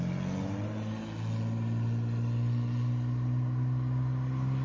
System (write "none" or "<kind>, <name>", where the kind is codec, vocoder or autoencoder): none